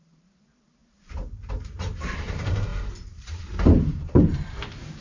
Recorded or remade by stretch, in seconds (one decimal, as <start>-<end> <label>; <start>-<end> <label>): 0.0-5.0 remade